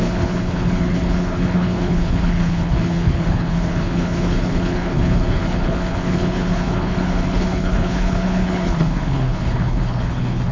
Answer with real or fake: fake